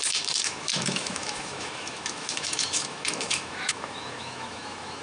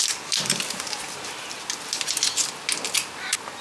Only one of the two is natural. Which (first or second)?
second